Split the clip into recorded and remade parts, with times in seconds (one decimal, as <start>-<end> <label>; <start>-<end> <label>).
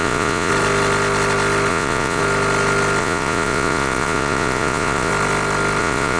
0.0-0.5 remade; 0.5-1.7 recorded; 1.7-2.2 remade; 2.2-3.0 recorded; 3.0-5.1 remade; 5.1-5.8 recorded; 5.8-6.2 remade